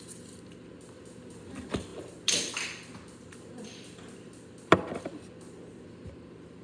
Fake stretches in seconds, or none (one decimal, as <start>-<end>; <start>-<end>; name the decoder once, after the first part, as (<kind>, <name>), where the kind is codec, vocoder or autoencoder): none